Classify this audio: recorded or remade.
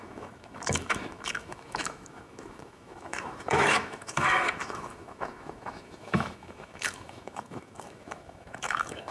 remade